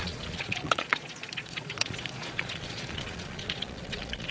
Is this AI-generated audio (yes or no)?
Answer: yes